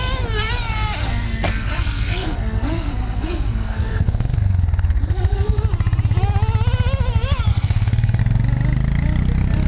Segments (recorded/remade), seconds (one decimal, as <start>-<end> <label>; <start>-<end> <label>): 0.0-1.0 recorded; 1.0-5.6 remade; 5.6-7.5 recorded; 7.5-8.2 remade; 8.2-9.7 recorded